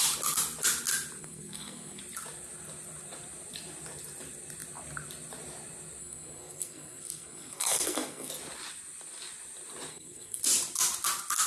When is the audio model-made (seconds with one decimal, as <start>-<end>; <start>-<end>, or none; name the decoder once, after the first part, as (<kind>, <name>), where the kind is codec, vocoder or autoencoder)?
1.2-2.0 (codec, SNAC); 6.0-8.3; 9.9-10.4